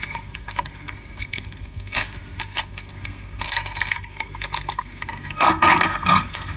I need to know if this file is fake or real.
fake